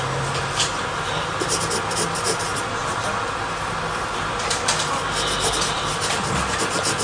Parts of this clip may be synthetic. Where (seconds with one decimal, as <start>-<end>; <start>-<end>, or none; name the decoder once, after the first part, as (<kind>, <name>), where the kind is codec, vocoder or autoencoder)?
none